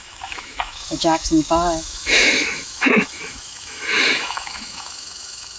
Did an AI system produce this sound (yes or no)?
yes